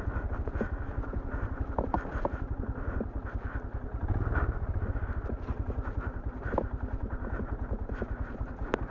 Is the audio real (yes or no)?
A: yes